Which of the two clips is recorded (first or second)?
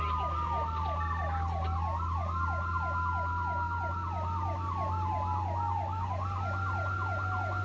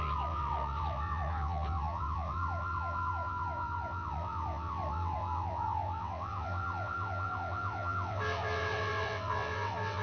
first